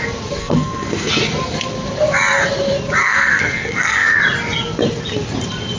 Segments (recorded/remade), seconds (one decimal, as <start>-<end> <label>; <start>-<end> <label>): 0.0-0.4 recorded; 0.4-1.1 remade; 1.1-3.0 recorded; 3.0-4.2 remade; 4.2-5.8 recorded